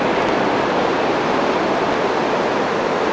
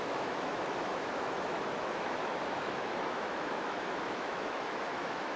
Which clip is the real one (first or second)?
first